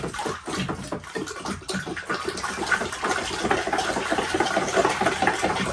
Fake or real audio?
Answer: real